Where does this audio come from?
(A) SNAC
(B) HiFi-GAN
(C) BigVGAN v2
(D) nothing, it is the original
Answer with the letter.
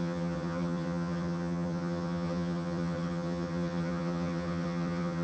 B